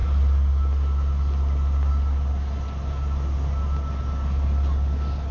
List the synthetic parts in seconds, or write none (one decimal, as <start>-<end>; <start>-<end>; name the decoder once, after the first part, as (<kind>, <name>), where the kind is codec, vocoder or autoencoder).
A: none

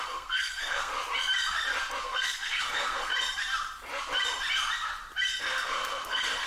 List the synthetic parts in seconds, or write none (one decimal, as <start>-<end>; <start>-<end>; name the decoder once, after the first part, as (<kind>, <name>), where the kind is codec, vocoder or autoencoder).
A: 0.0-0.9 (codec, SNAC); 2.0-3.1; 5.4-6.5